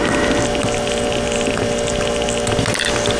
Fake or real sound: real